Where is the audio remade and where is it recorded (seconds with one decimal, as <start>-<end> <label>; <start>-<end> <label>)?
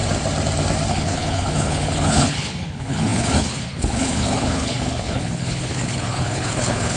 0.0-0.9 recorded; 0.9-7.0 remade